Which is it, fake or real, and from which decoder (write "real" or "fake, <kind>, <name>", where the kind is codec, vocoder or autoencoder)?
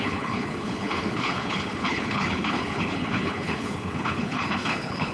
fake, codec, HILCodec